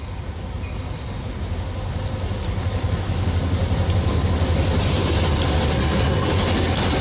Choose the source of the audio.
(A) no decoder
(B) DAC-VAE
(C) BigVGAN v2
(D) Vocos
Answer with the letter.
A